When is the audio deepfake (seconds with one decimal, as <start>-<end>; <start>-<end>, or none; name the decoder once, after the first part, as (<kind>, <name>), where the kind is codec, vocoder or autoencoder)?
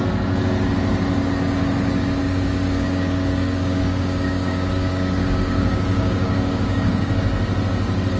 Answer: 2.2-7.1 (codec, DAC)